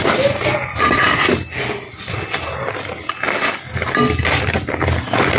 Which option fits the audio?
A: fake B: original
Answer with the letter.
B